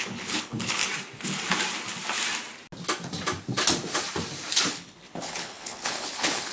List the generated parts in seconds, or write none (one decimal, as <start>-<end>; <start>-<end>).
0.0-0.8; 4.7-6.5